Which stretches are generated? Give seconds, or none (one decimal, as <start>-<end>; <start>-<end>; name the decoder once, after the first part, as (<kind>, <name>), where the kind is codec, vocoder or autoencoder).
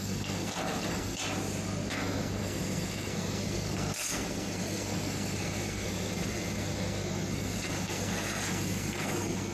0.0-1.2 (codec, SNAC); 1.9-9.5